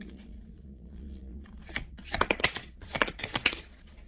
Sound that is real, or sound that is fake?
fake